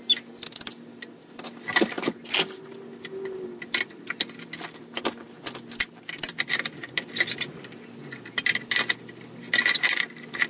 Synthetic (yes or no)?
no